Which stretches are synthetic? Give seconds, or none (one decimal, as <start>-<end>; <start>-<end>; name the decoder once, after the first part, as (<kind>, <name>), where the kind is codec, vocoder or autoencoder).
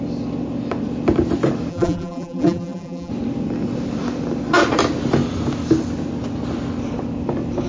1.7-3.1 (vocoder, BigVGAN v2)